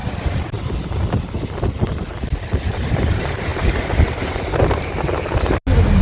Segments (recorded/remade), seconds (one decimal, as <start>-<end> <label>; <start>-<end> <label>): 0.0-2.9 recorded; 2.9-4.9 remade; 4.9-6.0 recorded